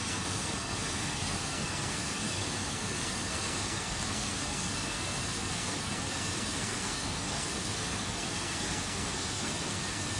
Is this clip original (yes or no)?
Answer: no